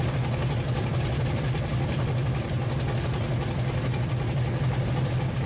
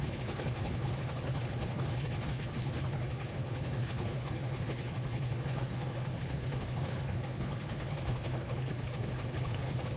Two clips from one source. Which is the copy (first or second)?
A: second